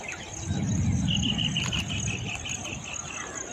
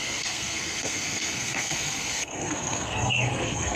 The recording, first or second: first